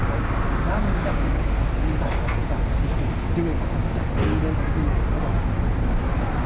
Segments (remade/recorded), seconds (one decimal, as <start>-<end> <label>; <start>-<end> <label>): 0.0-0.8 recorded; 0.8-1.4 remade; 1.4-6.5 recorded